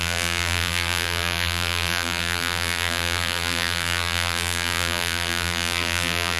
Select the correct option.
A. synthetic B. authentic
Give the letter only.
A